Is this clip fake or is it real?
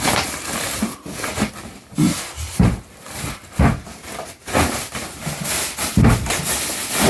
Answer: real